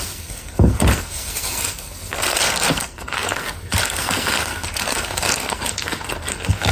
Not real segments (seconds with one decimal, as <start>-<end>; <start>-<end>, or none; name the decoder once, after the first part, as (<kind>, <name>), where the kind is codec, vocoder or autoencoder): 0.0-6.7 (codec, SNAC)